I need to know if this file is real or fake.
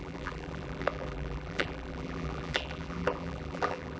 fake